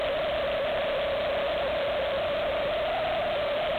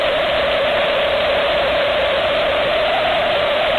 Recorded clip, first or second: first